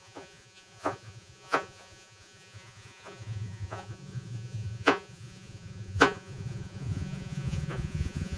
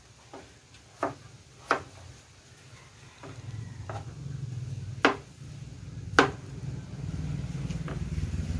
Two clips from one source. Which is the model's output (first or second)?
first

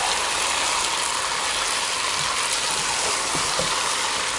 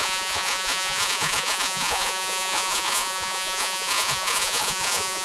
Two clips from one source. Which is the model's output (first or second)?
second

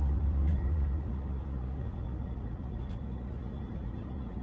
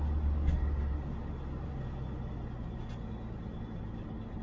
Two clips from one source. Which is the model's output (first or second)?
first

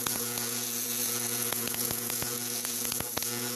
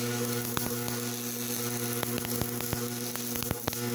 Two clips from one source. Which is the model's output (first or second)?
first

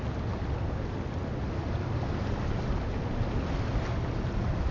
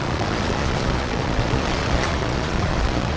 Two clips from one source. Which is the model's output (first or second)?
second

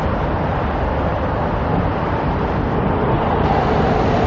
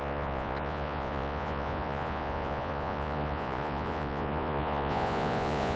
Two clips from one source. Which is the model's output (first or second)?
second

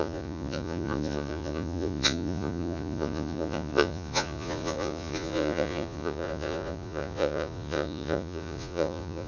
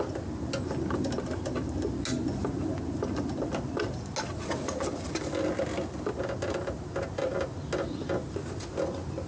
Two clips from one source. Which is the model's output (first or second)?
first